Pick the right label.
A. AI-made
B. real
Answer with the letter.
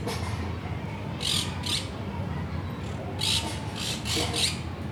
B